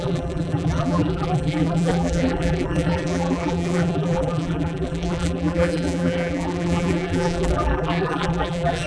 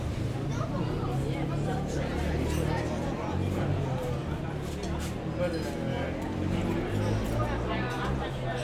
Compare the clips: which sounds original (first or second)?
second